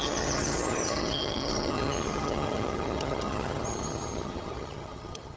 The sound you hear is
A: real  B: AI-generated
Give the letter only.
B